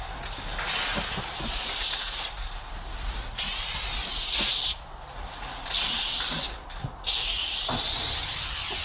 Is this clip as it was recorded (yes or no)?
yes